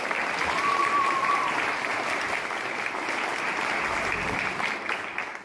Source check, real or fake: fake